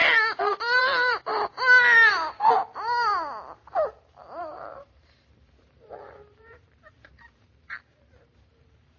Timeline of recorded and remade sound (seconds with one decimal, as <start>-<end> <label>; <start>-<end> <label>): 0.0-0.8 recorded; 0.8-1.3 remade; 1.3-4.4 recorded; 4.4-9.0 remade